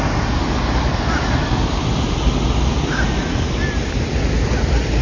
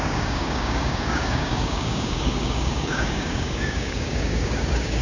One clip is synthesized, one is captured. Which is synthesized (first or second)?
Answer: second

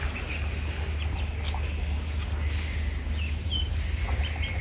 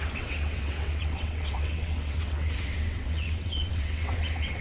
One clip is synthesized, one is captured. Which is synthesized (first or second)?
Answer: second